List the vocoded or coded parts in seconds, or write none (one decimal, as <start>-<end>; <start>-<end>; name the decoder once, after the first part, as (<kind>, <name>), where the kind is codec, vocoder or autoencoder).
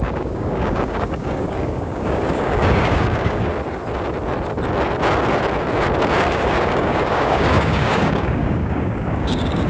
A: 0.0-3.5 (codec, DAC); 6.3-9.7